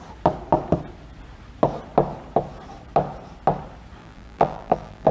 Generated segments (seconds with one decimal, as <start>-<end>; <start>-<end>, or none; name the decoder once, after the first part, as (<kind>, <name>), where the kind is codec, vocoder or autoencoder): 4.0-5.1 (vocoder, BigVGAN v2)